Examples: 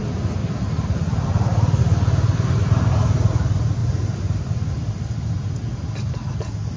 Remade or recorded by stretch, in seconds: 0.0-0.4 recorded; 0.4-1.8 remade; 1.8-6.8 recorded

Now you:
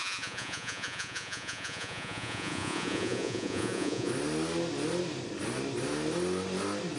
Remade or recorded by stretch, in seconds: 0.0-4.1 remade; 4.1-7.0 recorded

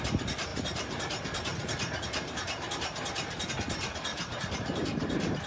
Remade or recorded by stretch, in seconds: 0.0-0.5 recorded; 0.5-3.5 remade; 3.5-4.1 recorded; 4.1-5.5 remade

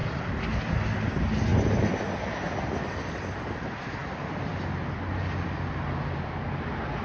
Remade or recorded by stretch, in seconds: 0.0-7.0 recorded

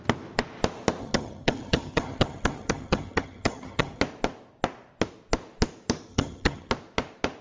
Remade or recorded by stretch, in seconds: 0.0-1.0 recorded; 1.0-4.0 remade; 4.0-6.1 recorded; 6.1-6.7 remade; 6.7-7.4 recorded

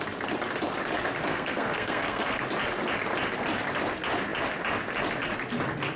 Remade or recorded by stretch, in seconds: 0.0-1.3 recorded; 1.3-2.4 remade; 2.4-6.0 recorded